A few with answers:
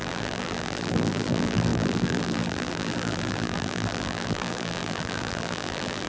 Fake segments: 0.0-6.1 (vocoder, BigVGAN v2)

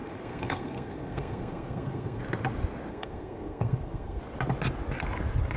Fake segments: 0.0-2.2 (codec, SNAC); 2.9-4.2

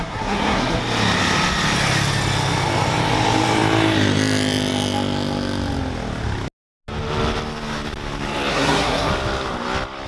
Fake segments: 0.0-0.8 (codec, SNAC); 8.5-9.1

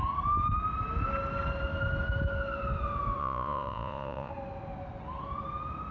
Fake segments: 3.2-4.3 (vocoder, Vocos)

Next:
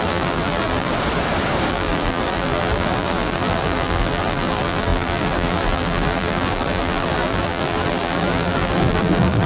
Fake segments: 0.0-0.9 (vocoder, BigVGAN v2); 1.7-9.5

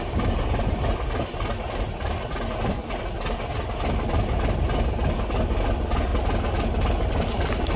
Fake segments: 0.0-0.9 (vocoder, BigVGAN v2); 5.6-6.1; 6.8-7.8

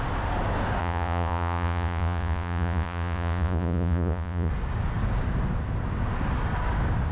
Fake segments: 0.8-4.5 (vocoder, Vocos)